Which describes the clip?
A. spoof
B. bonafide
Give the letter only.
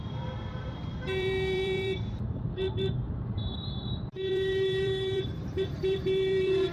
A